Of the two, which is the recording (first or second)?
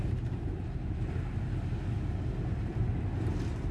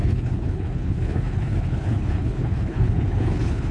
first